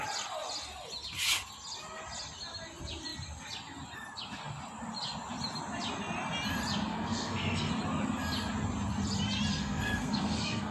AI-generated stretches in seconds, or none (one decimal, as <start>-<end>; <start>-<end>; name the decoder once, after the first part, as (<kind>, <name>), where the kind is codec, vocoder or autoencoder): 6.9-7.7 (codec, SNAC); 9.5-10.7